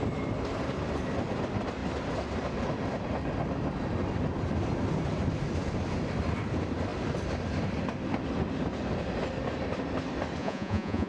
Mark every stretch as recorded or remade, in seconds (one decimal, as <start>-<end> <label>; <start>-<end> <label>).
0.0-10.4 recorded; 10.4-11.1 remade